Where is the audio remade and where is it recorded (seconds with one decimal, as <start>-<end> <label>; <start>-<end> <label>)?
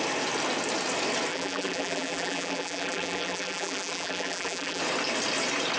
0.0-1.3 recorded; 1.3-4.8 remade; 4.8-5.8 recorded